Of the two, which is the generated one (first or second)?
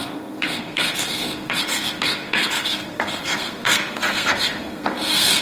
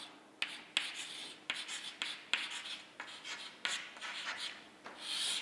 first